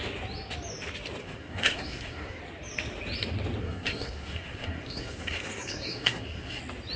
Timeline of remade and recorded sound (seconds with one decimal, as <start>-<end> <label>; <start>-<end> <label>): 0.0-1.2 recorded; 1.2-2.4 remade; 2.4-3.6 recorded; 3.6-6.6 remade; 6.6-7.0 recorded